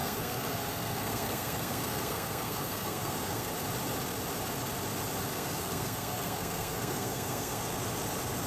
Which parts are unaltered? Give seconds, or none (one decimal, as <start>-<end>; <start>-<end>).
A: 3.5-5.3; 7.6-8.5